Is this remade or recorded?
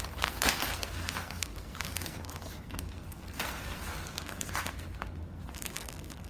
remade